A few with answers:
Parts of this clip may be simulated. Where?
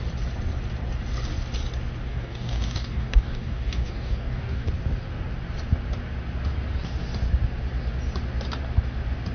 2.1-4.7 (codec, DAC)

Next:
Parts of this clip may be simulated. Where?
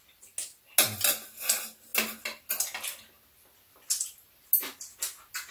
none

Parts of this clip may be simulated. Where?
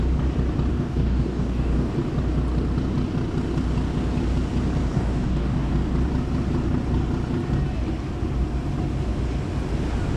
0.7-1.9 (codec, DAC); 4.9-5.7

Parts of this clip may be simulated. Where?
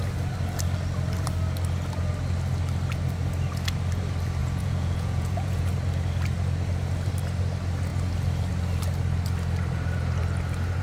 4.4-5.7 (vocoder, Vocos)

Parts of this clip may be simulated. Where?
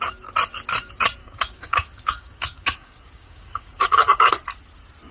1.2-4.3 (codec, DAC)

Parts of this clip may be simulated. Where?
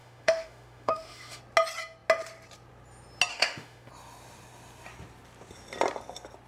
0.0-1.4 (autoencoder, DAC-VAE); 3.3-3.9